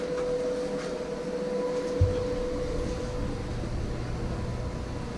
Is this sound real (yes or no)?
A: yes